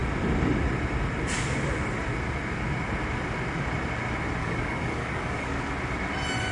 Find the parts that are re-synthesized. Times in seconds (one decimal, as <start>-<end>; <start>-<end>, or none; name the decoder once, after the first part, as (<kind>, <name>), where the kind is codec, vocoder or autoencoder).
4.4-5.6 (codec, DAC)